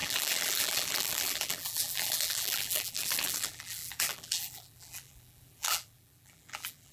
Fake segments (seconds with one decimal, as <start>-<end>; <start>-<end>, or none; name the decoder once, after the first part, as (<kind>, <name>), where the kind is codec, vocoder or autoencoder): 0.0-6.9 (vocoder, BigVGAN v2)